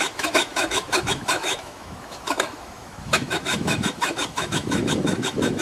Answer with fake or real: fake